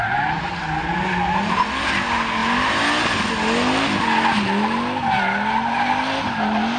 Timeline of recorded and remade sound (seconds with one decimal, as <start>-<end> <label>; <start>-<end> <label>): 0.0-6.8 recorded